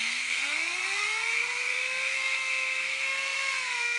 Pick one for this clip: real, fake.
fake